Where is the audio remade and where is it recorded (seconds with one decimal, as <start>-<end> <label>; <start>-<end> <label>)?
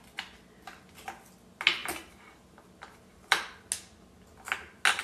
0.0-1.8 recorded; 1.8-3.5 remade; 3.5-5.0 recorded